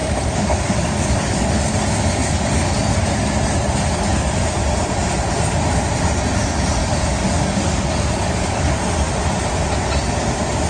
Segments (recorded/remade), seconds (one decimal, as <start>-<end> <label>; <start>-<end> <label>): 0.0-1.7 remade; 1.7-2.2 recorded; 2.2-3.0 remade; 3.0-6.8 recorded; 6.8-8.8 remade; 8.8-10.7 recorded